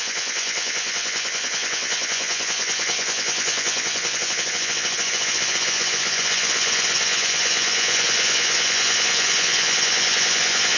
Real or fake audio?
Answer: fake